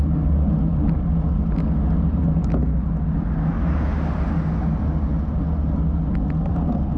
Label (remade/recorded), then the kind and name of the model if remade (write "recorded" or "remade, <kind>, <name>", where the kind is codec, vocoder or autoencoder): recorded